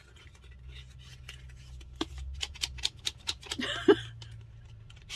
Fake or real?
real